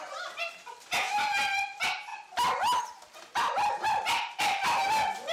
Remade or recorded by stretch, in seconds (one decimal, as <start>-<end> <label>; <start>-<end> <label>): 0.0-5.3 recorded